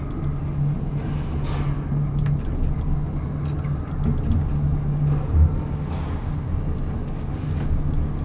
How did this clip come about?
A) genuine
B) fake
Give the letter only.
A